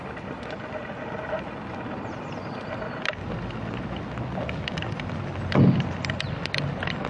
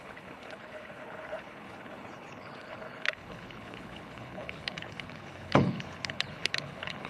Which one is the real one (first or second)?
first